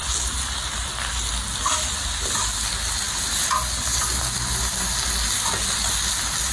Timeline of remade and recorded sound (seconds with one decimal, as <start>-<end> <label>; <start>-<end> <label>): 0.0-6.5 recorded